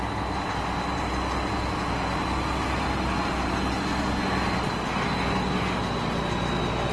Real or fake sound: real